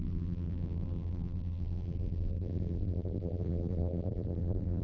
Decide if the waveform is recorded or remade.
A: remade